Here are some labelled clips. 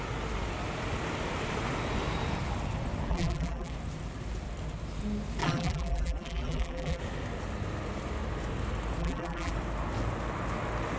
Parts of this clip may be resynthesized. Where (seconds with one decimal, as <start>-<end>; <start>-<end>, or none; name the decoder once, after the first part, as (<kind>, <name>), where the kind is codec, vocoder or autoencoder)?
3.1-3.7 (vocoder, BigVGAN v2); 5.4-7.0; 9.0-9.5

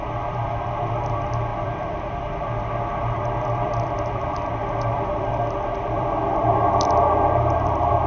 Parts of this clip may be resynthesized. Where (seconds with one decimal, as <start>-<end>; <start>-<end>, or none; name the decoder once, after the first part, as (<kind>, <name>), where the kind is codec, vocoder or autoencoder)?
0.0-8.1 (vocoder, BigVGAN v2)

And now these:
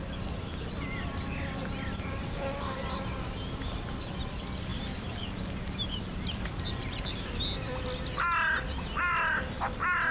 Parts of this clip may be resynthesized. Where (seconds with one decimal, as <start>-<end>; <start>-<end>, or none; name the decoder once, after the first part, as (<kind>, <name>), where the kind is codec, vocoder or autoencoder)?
4.7-7.4 (vocoder, BigVGAN v2)

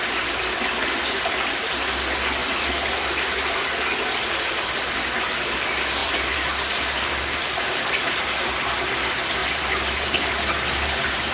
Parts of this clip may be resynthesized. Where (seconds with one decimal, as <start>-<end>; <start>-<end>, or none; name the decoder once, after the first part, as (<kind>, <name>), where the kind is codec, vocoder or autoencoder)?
6.0-8.2 (vocoder, BigVGAN v2); 9.4-11.3

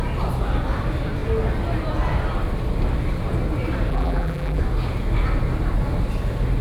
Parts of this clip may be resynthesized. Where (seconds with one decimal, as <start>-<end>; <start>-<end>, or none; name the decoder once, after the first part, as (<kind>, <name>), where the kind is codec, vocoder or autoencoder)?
3.9-4.6 (vocoder, BigVGAN v2)